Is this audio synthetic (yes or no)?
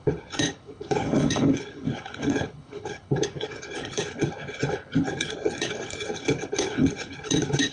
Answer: yes